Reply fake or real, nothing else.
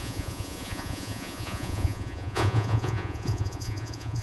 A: fake